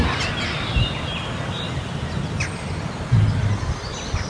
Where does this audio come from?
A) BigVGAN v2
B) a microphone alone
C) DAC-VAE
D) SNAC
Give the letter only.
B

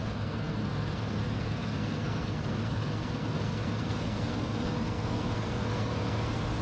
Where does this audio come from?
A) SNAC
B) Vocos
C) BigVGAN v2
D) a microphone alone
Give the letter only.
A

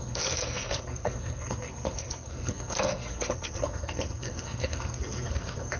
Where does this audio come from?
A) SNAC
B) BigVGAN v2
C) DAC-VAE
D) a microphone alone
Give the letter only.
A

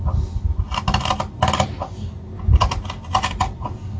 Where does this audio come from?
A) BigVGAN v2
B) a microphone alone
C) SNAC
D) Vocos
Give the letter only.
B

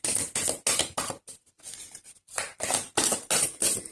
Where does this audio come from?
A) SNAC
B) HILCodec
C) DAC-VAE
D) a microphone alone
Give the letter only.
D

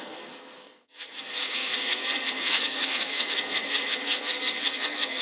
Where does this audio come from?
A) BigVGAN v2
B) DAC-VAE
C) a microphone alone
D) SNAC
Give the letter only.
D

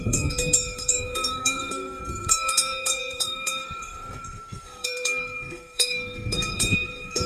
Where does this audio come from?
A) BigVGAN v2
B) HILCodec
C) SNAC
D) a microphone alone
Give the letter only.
C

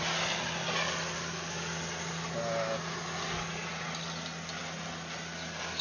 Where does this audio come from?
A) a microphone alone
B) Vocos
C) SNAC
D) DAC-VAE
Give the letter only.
A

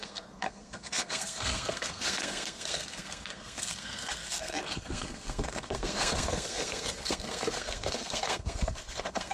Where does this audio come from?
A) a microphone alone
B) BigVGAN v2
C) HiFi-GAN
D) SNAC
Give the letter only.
D